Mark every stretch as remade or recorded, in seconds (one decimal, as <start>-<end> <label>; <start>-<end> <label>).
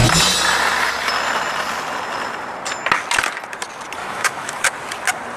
0.0-4.0 recorded; 4.0-4.6 remade; 4.6-5.4 recorded